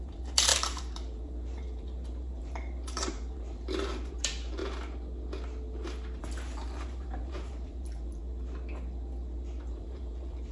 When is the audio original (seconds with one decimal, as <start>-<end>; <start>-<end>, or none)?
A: 4.6-6.2; 8.2-9.7